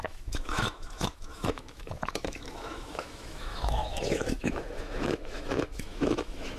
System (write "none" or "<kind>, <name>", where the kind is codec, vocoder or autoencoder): autoencoder, DAC-VAE